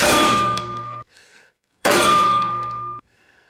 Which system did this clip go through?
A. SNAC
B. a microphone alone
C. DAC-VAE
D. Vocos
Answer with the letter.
A